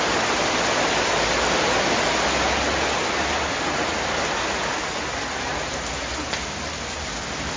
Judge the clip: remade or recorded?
recorded